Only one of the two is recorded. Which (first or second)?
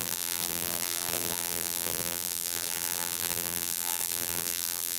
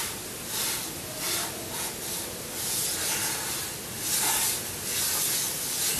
second